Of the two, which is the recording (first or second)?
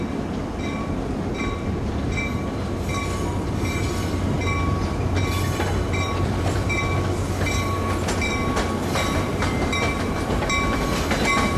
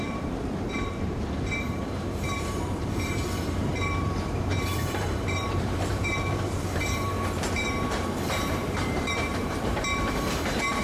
first